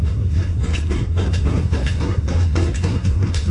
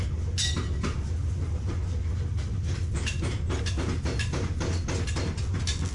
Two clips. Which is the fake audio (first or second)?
first